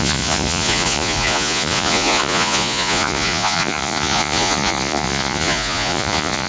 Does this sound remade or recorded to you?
remade